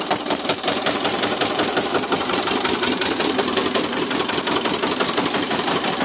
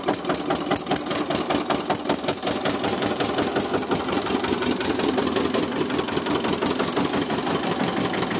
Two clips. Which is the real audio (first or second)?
second